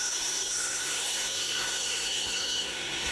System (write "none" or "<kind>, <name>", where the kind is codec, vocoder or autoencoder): codec, SNAC